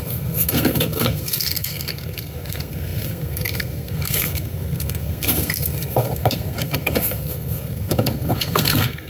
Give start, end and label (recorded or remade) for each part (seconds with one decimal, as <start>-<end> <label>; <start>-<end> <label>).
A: 0.0-9.1 remade